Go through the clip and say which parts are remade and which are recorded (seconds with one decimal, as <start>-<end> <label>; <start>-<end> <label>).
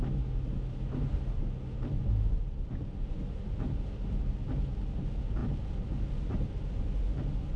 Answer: 0.0-7.6 recorded